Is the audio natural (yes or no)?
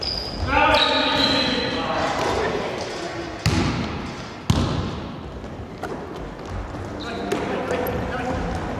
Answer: yes